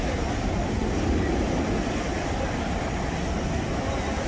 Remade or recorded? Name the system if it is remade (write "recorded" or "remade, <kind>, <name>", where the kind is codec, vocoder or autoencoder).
recorded